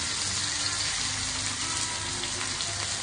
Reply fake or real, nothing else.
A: real